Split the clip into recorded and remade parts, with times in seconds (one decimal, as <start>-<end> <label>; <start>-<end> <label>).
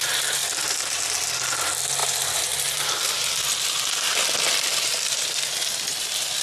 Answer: 0.0-2.0 recorded; 2.0-5.8 remade; 5.8-6.4 recorded